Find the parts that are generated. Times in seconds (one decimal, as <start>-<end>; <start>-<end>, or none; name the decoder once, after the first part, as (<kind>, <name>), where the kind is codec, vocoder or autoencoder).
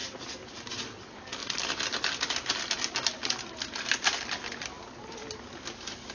none